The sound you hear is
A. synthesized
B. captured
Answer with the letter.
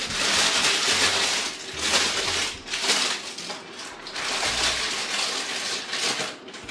B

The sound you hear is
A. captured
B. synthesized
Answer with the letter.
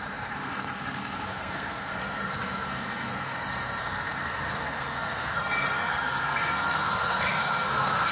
B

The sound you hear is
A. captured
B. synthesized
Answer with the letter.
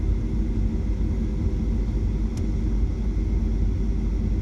A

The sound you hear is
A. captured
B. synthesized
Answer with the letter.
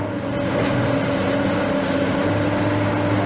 A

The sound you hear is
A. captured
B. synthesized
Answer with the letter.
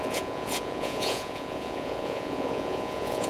B